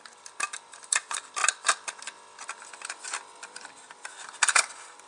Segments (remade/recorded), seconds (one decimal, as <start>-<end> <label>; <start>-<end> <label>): 0.0-1.4 remade; 1.4-2.9 recorded; 2.9-5.1 remade